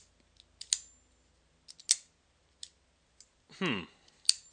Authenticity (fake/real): real